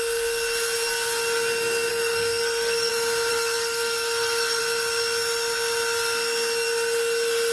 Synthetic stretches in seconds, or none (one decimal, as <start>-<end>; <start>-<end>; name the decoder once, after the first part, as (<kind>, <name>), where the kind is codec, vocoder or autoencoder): 1.9-2.9 (codec, SNAC); 3.3-4.6